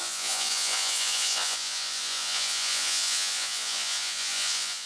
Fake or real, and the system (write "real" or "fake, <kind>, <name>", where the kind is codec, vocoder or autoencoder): fake, vocoder, Vocos